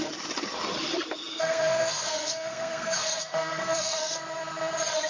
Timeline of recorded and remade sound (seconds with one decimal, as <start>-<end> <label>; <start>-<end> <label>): 0.0-1.3 recorded; 1.3-4.2 remade; 4.2-5.1 recorded